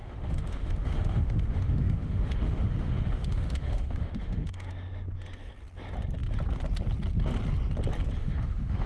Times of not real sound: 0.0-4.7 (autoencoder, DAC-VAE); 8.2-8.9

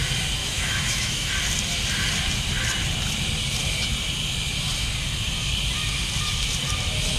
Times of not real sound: 0.4-1.3 (autoencoder, DAC-VAE)

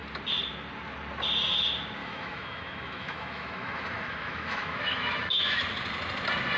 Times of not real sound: 2.0-5.7 (autoencoder, DAC-VAE)